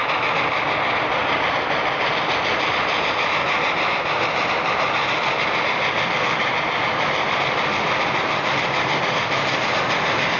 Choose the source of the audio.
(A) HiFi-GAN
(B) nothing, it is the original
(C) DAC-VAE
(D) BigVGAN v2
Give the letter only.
B